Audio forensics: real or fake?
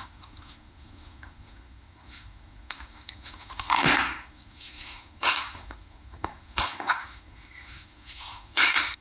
fake